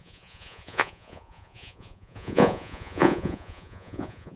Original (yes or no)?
no